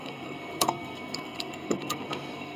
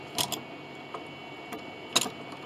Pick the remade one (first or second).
first